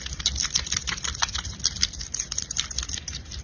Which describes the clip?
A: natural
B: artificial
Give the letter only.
B